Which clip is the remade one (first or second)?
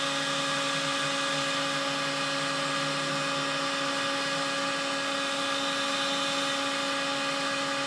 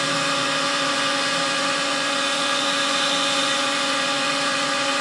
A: second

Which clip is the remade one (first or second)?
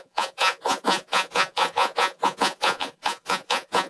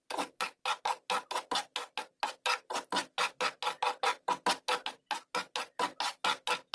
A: first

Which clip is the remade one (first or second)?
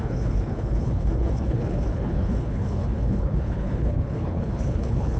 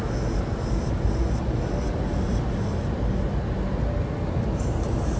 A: first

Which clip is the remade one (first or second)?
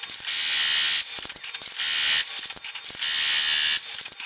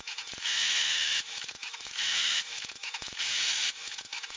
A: second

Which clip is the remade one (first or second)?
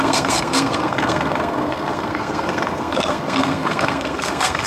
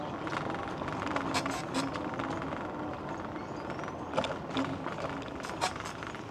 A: first